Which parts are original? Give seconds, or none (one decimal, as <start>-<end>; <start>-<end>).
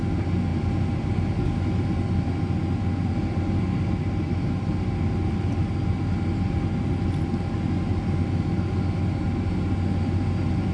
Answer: 0.0-10.7